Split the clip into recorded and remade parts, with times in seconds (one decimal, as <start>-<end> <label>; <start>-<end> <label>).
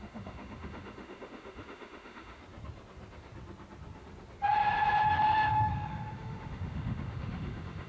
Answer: 0.0-2.4 remade; 2.4-5.1 recorded; 5.1-7.9 remade